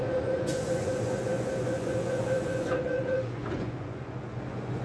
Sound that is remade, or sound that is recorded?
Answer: remade